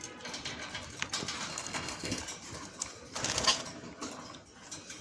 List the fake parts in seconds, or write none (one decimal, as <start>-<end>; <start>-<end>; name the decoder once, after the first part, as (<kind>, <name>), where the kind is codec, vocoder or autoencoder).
1.5-2.2 (codec, SNAC)